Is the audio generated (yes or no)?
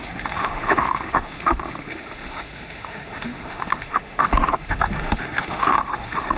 yes